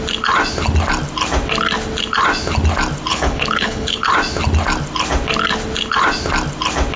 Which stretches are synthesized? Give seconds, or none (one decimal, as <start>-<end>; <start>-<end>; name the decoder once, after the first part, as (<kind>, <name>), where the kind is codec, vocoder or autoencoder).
3.1-4.1 (codec, HILCodec)